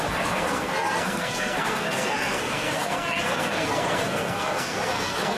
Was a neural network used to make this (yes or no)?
yes